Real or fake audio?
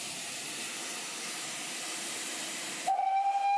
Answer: real